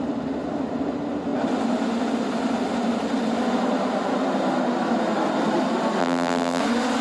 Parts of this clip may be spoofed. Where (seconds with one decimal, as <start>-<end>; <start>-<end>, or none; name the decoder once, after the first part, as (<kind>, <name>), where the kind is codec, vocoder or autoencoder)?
6.0-6.6 (vocoder, BigVGAN v2)